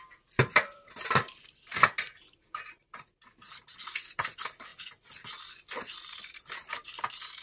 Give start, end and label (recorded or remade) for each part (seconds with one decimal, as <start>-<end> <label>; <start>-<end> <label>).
0.0-7.4 recorded